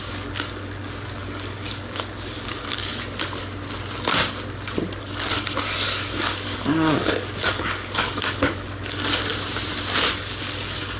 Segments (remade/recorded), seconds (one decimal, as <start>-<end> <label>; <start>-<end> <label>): 0.0-2.9 remade; 2.9-5.0 recorded; 5.0-9.3 remade; 9.3-10.1 recorded; 10.1-11.0 remade